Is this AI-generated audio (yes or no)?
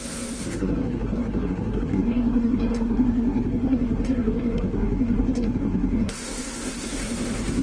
yes